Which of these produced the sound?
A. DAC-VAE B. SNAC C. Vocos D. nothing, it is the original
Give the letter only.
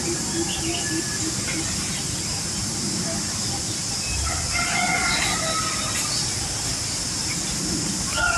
D